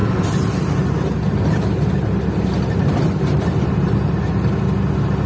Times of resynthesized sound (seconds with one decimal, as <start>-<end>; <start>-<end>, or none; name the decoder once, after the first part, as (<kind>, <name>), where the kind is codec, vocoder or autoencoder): none